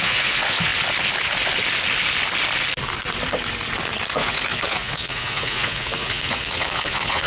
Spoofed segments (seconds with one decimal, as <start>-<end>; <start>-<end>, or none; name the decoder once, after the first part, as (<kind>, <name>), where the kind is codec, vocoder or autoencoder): 0.0-0.7 (vocoder, Vocos); 4.1-7.3